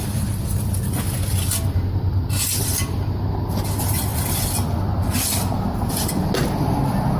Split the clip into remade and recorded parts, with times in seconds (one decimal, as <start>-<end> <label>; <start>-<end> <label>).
0.0-7.2 recorded